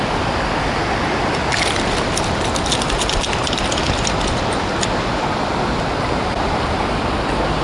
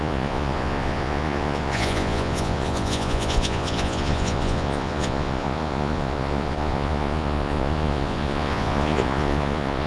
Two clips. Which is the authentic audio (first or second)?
first